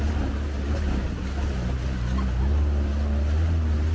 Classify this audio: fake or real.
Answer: real